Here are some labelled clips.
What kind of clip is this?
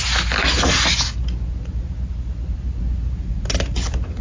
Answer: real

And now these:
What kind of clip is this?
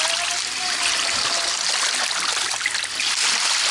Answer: real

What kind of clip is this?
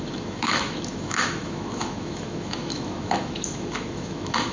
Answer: fake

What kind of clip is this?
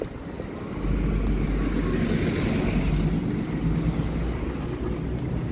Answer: real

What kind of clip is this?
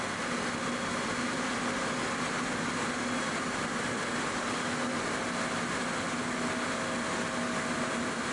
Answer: real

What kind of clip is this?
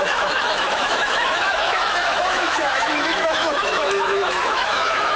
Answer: fake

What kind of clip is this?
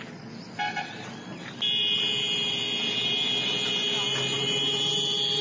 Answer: real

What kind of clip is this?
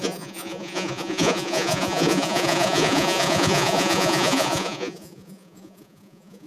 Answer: fake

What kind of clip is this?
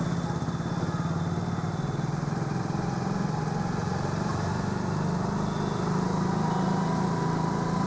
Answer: real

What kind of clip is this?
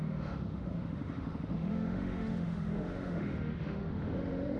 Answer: fake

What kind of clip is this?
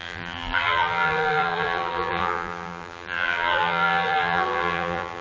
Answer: fake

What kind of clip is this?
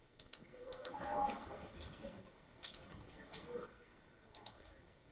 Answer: fake